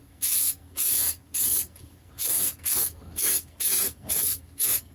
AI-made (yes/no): yes